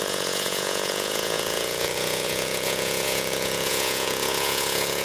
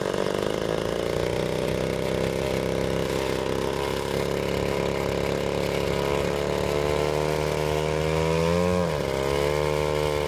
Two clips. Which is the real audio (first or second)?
second